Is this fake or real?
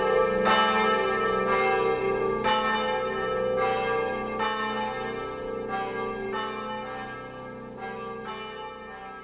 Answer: real